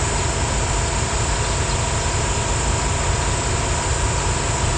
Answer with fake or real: real